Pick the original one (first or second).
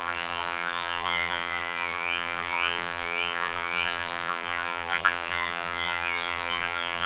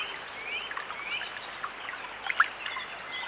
second